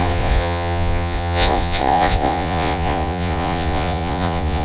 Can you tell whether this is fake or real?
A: fake